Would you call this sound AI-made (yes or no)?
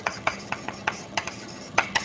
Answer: yes